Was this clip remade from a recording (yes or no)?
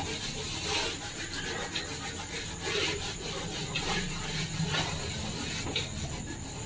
no